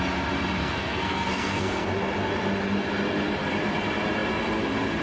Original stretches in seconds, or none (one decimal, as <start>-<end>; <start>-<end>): 0.0-0.6; 1.9-5.0